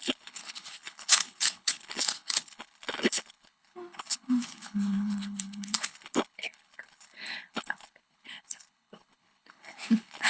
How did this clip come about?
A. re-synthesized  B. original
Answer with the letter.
A